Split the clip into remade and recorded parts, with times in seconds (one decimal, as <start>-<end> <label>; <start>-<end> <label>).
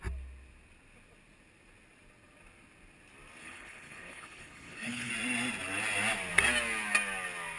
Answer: 0.0-3.4 recorded; 3.4-5.1 remade; 5.1-7.6 recorded